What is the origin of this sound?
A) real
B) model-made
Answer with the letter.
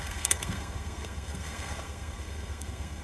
B